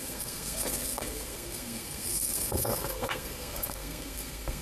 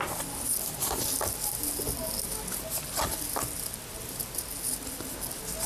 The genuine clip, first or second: second